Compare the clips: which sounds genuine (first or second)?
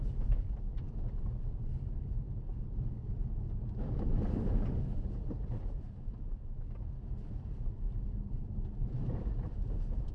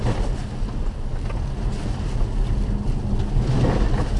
second